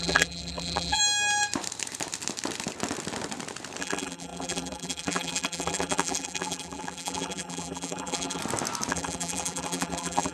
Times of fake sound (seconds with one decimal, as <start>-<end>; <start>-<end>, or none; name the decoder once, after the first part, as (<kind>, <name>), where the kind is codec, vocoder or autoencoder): 0.0-1.0 (vocoder, BigVGAN v2); 3.8-8.4; 8.9-10.3